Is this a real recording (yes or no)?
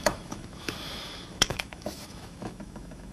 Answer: no